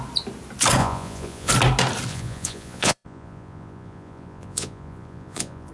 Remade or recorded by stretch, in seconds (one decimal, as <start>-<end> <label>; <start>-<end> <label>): 0.0-0.8 recorded; 0.8-1.5 remade; 1.5-2.1 recorded; 2.1-5.7 remade